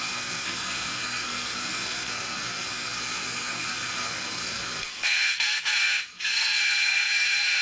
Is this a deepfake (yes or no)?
yes